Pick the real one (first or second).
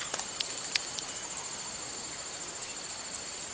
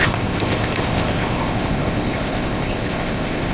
first